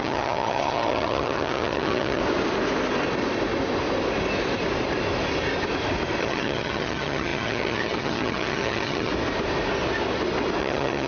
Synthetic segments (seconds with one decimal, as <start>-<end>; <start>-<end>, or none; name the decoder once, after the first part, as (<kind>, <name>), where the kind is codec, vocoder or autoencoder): 0.0-2.2 (vocoder, HiFi-GAN); 6.2-9.1; 10.6-11.1